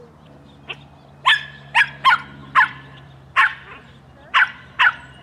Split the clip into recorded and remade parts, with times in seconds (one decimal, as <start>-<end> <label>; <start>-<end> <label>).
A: 0.0-2.4 recorded; 2.4-4.0 remade; 4.0-5.2 recorded